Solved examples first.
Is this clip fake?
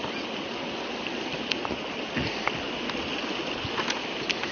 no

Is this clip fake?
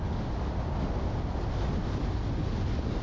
no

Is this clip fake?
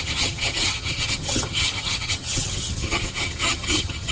yes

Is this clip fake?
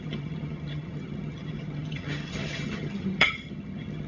yes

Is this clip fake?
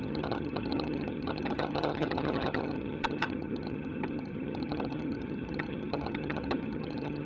yes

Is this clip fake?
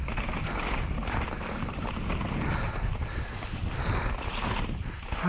no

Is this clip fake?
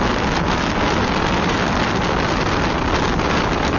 no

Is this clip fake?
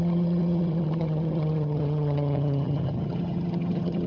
yes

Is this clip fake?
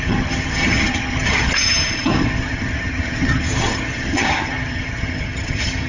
yes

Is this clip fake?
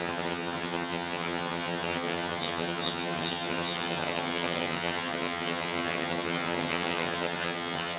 yes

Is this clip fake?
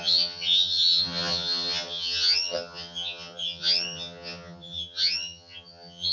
yes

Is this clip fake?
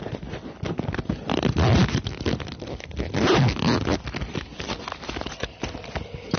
no